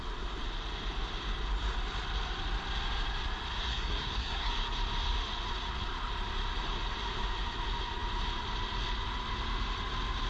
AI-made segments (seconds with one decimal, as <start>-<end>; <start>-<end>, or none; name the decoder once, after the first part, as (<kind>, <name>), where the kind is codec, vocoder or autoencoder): 3.7-4.5 (codec, SNAC)